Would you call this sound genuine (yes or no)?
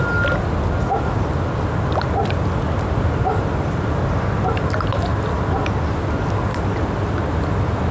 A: yes